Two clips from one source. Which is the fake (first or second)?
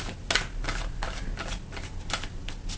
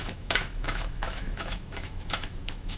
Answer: second